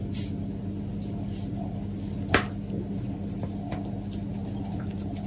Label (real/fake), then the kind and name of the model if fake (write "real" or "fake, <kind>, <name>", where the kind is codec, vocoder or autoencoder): real